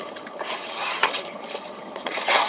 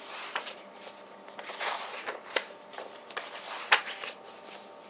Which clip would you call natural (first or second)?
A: second